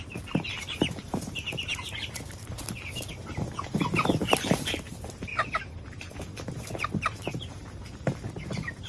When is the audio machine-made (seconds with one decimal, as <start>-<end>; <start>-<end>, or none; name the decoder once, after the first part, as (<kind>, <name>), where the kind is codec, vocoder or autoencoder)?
0.0-8.9 (vocoder, BigVGAN v2)